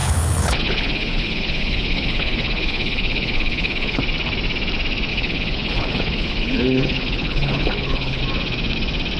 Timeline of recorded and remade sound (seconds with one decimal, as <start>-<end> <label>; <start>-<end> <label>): 0.0-4.0 remade; 4.0-5.1 recorded; 5.1-8.2 remade; 8.2-9.2 recorded